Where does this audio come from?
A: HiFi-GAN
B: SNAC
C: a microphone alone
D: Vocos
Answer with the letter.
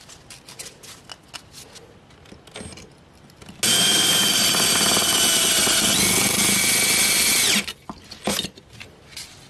C